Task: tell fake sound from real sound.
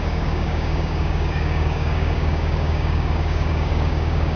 fake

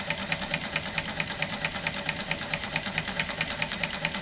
real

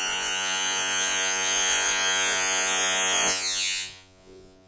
fake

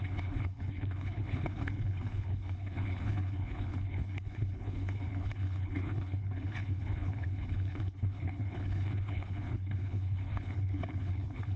fake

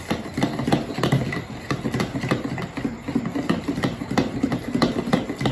real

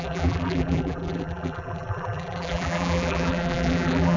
fake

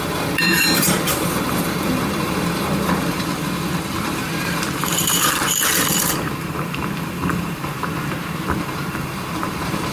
fake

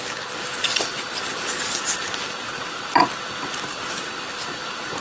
real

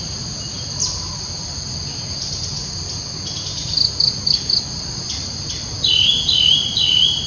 real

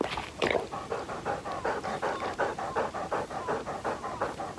real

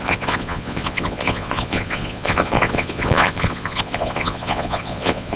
fake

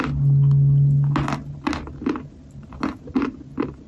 real